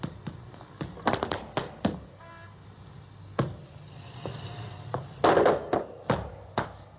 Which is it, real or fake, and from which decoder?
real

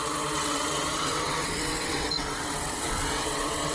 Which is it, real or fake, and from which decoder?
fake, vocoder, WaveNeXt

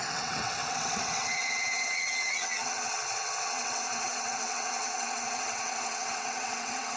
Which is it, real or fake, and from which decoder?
fake, vocoder, WaveNeXt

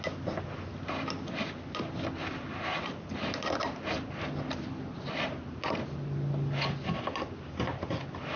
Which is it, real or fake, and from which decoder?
real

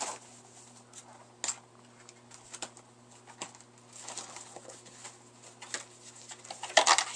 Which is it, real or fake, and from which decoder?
real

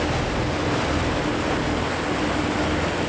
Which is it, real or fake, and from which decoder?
real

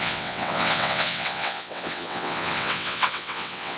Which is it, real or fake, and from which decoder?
fake, vocoder, WaveNeXt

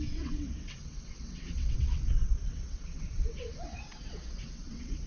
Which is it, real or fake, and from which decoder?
fake, vocoder, WaveNeXt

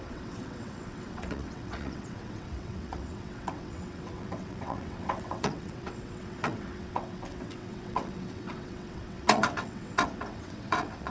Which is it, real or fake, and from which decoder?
fake, vocoder, WaveNeXt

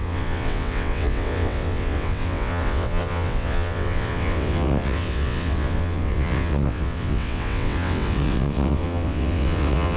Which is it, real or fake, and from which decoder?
fake, vocoder, WaveNeXt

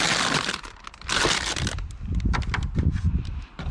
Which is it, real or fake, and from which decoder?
real